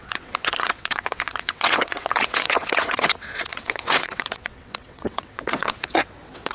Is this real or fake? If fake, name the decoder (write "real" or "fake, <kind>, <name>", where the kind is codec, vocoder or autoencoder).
fake, vocoder, WaveNeXt